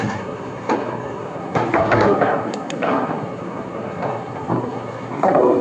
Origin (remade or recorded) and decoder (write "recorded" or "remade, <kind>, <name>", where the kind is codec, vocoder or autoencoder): remade, codec, SNAC